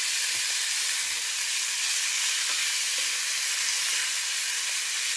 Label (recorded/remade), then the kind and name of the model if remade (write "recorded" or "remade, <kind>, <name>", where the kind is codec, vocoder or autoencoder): recorded